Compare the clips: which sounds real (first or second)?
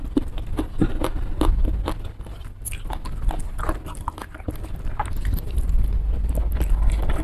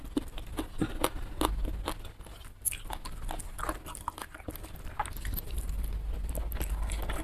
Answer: second